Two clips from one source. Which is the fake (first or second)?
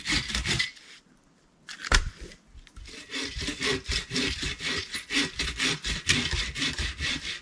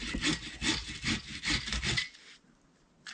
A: first